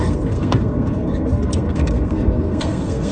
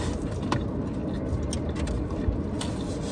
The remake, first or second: first